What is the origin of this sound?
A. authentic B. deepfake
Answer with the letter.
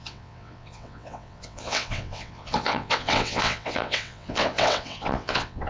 B